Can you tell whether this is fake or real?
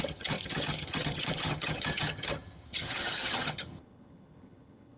fake